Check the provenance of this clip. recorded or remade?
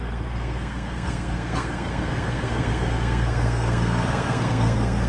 remade